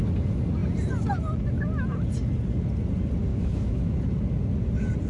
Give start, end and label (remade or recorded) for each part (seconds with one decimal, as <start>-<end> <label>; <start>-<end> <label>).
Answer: 0.0-3.3 recorded; 3.3-3.8 remade; 3.8-5.1 recorded